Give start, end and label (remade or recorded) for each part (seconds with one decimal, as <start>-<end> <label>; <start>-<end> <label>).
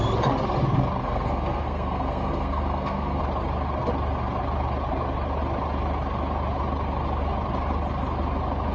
0.0-1.0 recorded; 1.0-3.2 remade; 3.2-8.7 recorded